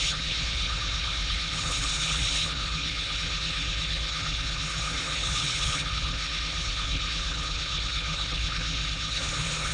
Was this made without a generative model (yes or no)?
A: no